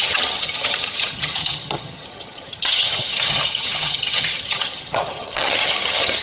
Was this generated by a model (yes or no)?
yes